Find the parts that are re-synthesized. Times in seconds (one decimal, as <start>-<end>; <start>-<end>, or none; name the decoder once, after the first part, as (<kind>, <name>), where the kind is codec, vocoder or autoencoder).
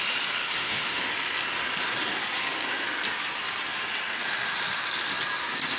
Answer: 0.4-1.0 (autoencoder, DAC-VAE)